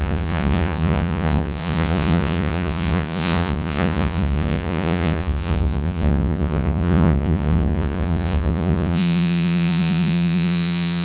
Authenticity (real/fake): fake